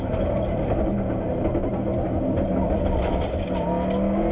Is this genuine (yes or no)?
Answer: yes